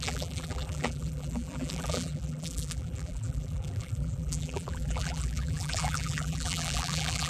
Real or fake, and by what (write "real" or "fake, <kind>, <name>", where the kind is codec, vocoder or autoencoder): fake, vocoder, BigVGAN v2